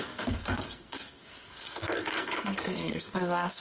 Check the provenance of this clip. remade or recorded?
remade